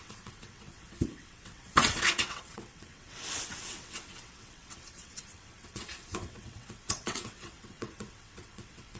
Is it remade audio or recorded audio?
remade